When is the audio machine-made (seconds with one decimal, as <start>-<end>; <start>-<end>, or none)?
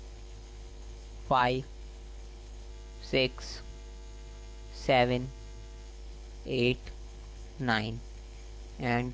0.0-2.7; 5.9-9.1